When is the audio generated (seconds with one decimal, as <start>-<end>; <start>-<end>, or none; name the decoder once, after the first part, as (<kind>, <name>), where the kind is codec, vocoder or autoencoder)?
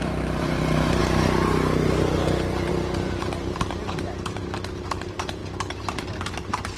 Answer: 0.0-1.0 (vocoder, BigVGAN v2); 2.7-5.4